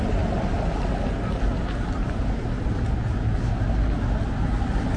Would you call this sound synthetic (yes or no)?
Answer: no